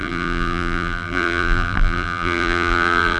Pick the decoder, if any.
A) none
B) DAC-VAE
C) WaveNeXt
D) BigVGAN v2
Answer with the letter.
D